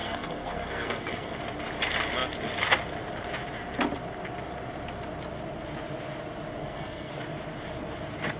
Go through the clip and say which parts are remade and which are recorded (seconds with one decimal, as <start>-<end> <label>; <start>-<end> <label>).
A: 0.0-1.4 remade; 1.4-6.6 recorded; 6.6-7.1 remade; 7.1-8.4 recorded